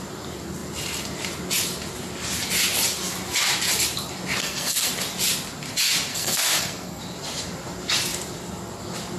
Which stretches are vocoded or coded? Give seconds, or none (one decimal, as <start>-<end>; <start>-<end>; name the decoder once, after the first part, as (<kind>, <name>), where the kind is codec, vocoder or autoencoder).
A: 4.4-4.9 (codec, SNAC); 6.1-7.0